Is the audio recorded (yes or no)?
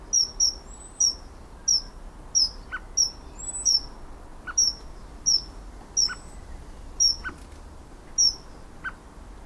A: yes